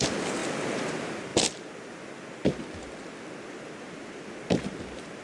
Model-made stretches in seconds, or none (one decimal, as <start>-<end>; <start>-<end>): none